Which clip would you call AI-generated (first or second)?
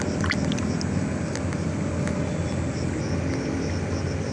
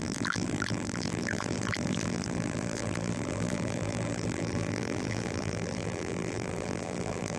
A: second